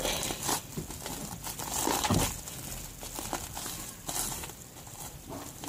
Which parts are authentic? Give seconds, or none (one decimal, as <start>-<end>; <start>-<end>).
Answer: 0.6-4.0